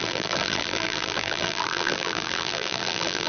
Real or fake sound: fake